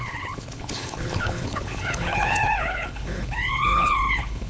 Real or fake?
fake